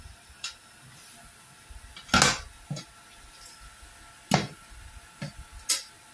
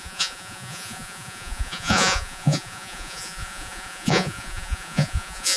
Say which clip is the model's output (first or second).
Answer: second